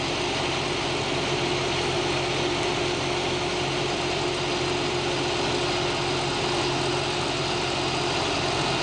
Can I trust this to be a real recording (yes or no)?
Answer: yes